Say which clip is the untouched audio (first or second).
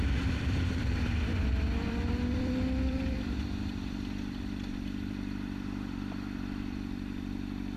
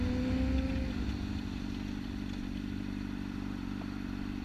second